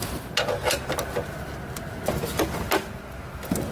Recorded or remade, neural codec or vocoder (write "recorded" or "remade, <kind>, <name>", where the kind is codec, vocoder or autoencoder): recorded